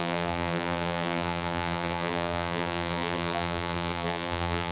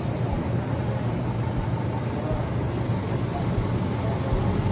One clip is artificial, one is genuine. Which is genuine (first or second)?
second